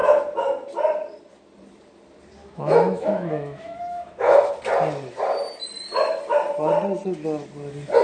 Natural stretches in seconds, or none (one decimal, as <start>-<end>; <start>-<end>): 0.0-2.4; 4.5-8.0

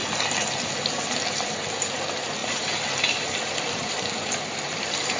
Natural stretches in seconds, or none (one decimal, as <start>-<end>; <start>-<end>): 0.0-2.4

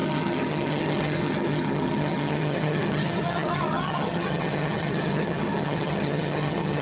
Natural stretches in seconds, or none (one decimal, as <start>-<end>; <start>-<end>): none